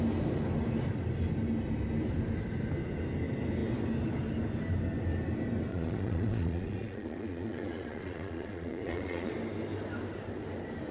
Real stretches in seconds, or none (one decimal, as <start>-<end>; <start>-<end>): 0.0-5.7; 9.3-10.9